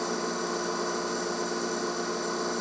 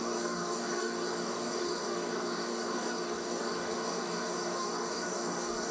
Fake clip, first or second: second